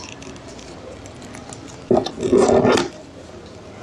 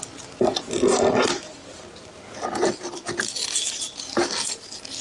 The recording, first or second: first